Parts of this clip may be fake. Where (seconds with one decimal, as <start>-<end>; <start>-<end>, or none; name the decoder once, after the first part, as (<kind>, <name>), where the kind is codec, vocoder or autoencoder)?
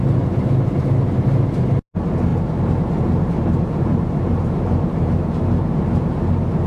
2.3-6.3 (vocoder, BigVGAN v2)